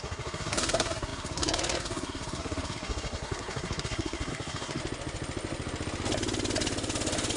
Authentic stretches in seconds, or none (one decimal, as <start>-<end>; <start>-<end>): 4.8-7.4